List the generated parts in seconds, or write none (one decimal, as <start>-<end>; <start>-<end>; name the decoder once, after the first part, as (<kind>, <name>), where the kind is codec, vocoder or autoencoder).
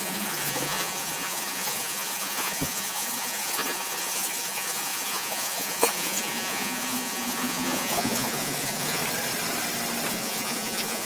0.0-9.0 (vocoder, Vocos); 10.1-11.1